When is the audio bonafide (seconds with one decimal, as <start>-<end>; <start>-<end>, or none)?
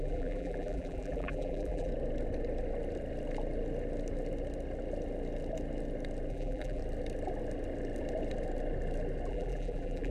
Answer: 1.9-6.3; 6.8-9.3